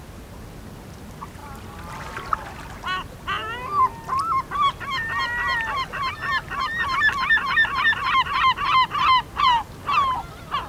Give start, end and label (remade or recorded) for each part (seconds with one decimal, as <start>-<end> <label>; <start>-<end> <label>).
0.0-10.7 recorded